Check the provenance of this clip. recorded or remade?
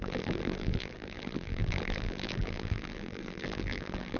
remade